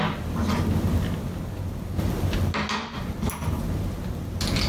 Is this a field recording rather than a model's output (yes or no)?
yes